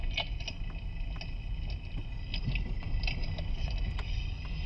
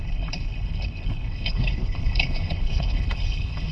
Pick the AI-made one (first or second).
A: second